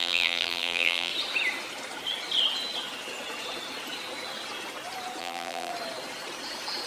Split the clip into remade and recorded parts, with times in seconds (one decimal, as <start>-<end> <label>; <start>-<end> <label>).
0.0-1.1 remade; 1.1-5.2 recorded; 5.2-5.7 remade; 5.7-6.9 recorded